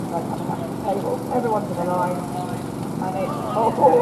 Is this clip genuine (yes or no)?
yes